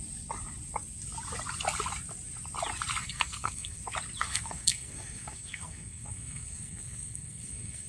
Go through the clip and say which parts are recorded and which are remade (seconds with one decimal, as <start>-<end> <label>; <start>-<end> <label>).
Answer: 0.0-3.0 recorded; 3.0-3.8 remade; 3.8-4.2 recorded; 4.2-7.9 remade